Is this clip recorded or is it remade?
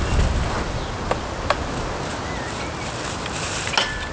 recorded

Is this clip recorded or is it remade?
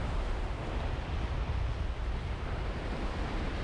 recorded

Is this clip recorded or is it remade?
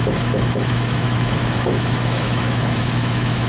remade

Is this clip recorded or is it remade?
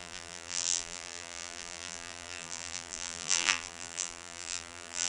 remade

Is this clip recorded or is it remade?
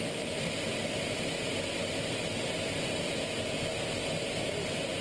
recorded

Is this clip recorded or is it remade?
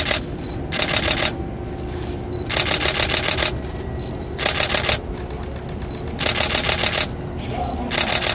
recorded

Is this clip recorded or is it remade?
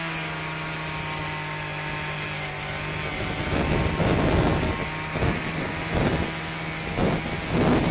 recorded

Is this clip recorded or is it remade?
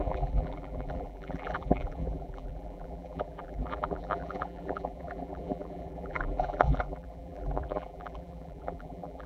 remade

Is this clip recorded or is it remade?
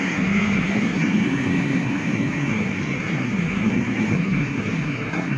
remade